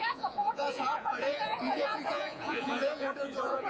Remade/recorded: remade